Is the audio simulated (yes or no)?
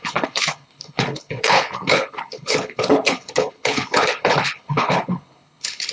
yes